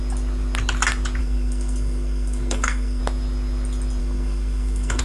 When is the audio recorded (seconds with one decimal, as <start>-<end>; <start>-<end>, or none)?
0.0-1.2; 3.0-4.0

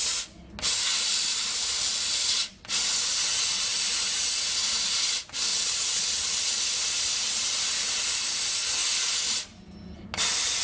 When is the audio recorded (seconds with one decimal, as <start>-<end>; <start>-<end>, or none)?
0.0-5.5; 6.1-10.6